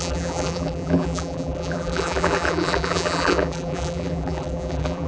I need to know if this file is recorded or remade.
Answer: remade